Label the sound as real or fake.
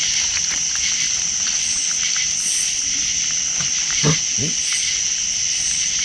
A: real